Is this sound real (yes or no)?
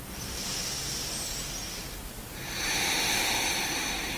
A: yes